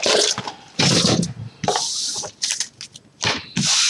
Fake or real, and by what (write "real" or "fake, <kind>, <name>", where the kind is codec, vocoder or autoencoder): real